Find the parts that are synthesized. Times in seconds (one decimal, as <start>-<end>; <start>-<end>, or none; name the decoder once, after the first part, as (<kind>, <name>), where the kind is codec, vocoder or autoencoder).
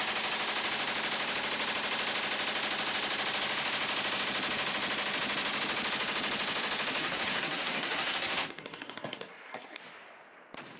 7.0-9.8 (codec, SNAC)